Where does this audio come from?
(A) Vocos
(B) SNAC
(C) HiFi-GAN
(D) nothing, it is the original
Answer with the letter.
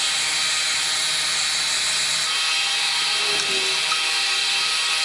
D